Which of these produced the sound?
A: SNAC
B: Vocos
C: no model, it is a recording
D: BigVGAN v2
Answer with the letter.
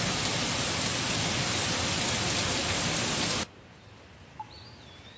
C